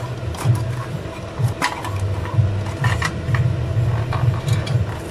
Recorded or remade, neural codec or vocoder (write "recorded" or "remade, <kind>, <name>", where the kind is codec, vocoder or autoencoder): recorded